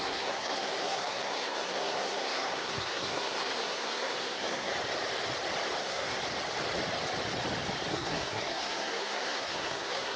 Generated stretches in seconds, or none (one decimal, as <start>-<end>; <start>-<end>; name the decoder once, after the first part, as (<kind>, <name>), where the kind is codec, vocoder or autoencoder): 0.0-4.7 (codec, SNAC); 5.8-6.2; 7.9-10.2